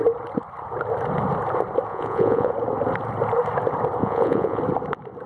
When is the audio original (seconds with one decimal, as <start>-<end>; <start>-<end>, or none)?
0.0-1.9; 2.5-4.0; 4.6-5.3